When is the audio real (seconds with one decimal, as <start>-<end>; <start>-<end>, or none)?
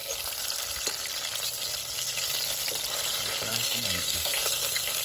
0.0-3.5